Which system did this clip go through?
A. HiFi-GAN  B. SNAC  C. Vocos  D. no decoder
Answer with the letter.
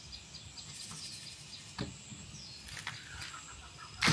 D